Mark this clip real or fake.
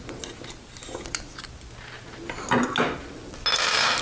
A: real